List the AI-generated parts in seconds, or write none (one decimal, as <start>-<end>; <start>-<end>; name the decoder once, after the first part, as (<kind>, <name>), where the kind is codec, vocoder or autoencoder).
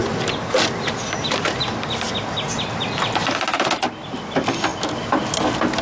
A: none